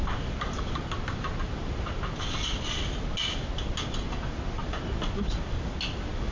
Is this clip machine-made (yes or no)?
no